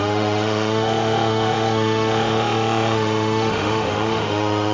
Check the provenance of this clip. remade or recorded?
remade